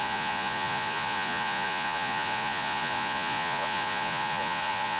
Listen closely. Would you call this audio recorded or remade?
remade